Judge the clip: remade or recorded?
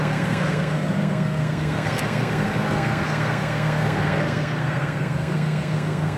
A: remade